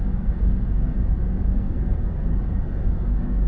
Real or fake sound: fake